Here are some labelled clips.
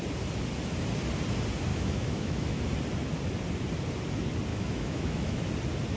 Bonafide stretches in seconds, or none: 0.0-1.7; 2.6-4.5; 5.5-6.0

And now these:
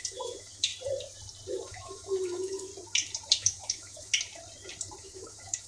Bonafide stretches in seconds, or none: 0.7-1.5; 2.7-3.3; 4.1-5.0

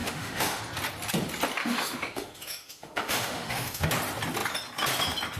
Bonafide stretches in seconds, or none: 0.6-1.6; 3.9-5.4

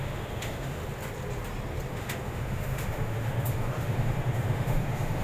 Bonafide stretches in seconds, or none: 0.8-1.9